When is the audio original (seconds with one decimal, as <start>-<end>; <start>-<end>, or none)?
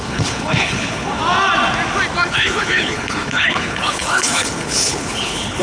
1.2-2.3